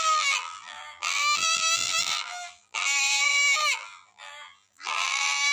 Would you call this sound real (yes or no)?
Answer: no